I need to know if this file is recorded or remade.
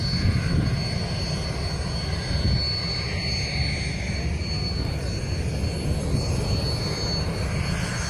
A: recorded